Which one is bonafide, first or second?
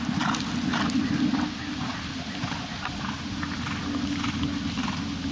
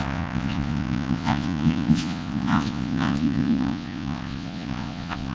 first